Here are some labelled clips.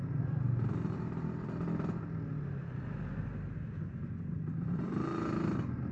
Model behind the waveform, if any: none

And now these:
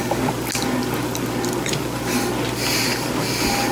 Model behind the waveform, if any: none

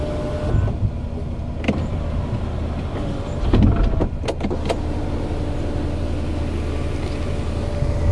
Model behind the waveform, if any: none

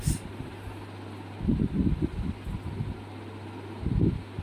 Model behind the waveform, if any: none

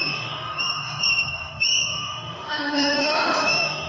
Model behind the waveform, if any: autoencoder, DAC-VAE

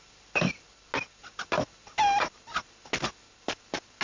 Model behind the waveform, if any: none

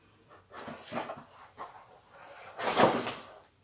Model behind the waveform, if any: none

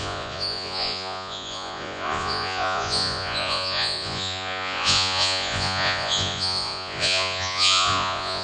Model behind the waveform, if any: vocoder, Vocos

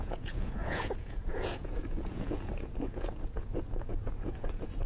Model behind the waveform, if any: vocoder, Vocos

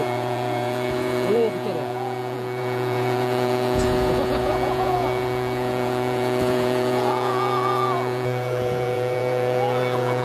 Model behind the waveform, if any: vocoder, Vocos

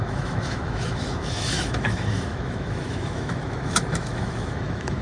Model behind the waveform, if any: autoencoder, DAC-VAE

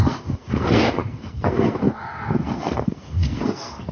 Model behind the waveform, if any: codec, SNAC